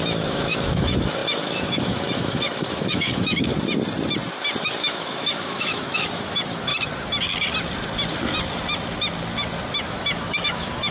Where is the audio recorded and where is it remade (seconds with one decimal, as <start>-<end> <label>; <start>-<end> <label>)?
0.0-3.5 remade; 3.5-4.6 recorded; 4.6-6.7 remade; 6.7-9.9 recorded; 9.9-10.9 remade